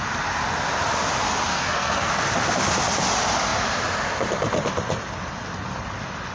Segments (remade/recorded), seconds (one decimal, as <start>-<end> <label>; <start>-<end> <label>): 0.0-1.5 recorded; 1.5-2.1 remade; 2.1-6.3 recorded